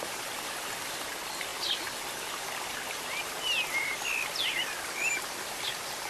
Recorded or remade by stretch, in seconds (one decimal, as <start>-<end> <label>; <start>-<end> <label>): 0.0-6.1 recorded